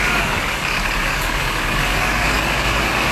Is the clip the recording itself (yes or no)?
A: no